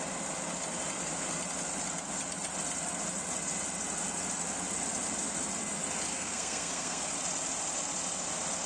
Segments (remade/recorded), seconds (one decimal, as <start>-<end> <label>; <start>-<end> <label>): 0.0-6.1 recorded; 6.1-7.1 remade; 7.1-8.7 recorded